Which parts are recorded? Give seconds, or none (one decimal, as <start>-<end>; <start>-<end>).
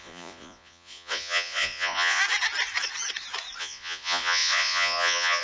2.2-3.6